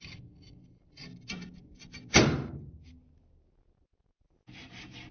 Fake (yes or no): no